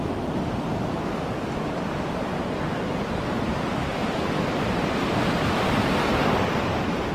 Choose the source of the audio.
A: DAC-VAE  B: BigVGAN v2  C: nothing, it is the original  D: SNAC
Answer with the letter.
C